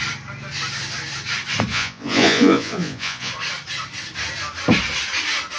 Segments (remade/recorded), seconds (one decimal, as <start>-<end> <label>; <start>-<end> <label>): 0.0-1.7 recorded; 1.7-3.3 remade; 3.3-5.6 recorded